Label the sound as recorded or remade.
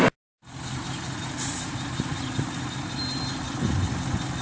recorded